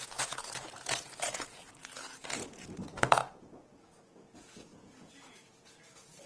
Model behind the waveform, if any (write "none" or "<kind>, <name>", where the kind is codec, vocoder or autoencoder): vocoder, Vocos